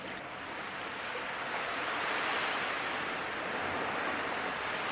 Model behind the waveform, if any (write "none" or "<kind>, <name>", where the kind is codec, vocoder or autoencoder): none